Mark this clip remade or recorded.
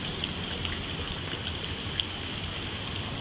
recorded